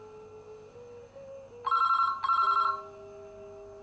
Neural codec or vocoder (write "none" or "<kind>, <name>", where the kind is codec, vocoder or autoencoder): none